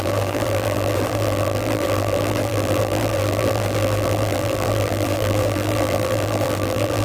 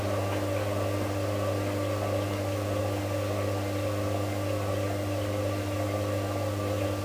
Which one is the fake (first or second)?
first